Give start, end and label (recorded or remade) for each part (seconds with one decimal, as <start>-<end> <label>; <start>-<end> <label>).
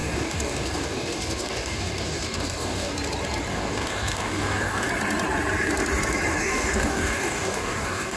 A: 0.0-2.9 remade; 2.9-3.5 recorded; 3.5-4.9 remade; 4.9-6.3 recorded; 6.3-8.2 remade